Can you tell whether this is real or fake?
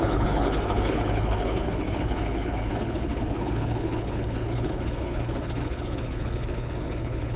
fake